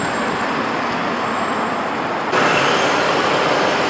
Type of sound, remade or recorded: recorded